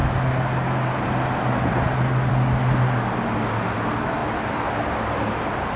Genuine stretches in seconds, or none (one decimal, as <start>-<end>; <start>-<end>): 0.0-5.8